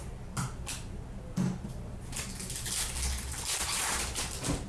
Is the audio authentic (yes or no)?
yes